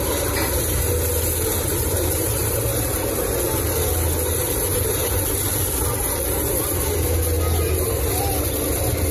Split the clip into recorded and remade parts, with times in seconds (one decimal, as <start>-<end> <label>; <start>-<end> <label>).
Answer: 0.0-1.7 recorded; 1.7-2.6 remade; 2.6-4.7 recorded; 4.7-5.2 remade; 5.2-9.1 recorded